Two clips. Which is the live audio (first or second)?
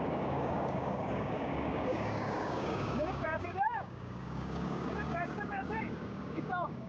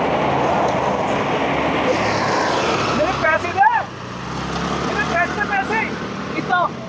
second